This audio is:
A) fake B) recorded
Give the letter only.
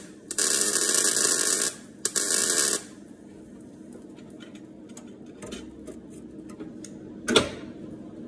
B